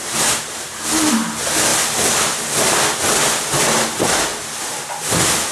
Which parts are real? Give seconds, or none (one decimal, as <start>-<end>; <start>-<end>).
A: 0.0-5.5